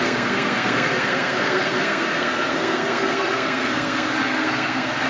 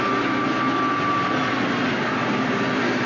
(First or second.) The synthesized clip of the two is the first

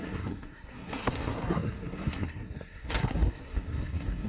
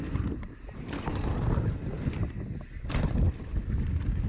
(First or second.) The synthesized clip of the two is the first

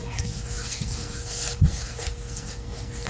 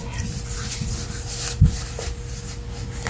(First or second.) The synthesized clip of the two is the first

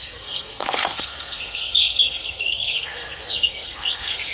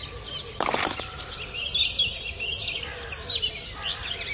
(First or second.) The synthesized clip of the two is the first